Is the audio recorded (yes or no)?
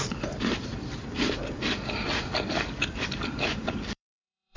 no